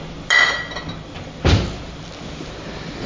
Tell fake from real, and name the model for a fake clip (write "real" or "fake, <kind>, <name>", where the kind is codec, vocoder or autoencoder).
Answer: real